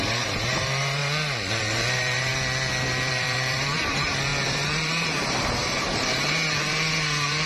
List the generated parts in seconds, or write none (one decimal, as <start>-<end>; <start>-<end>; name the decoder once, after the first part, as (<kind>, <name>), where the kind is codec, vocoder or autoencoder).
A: 0.0-1.0 (vocoder, BigVGAN v2); 1.5-2.3; 3.1-7.5